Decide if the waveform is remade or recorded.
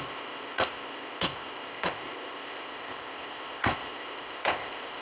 remade